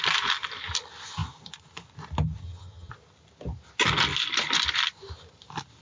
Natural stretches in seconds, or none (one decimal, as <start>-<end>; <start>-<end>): 0.0-2.4; 2.9-5.8